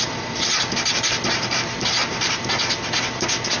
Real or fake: real